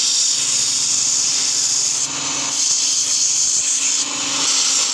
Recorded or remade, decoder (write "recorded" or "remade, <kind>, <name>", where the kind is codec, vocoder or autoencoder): recorded